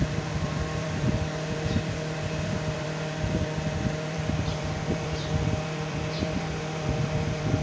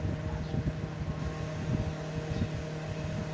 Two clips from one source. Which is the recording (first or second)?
second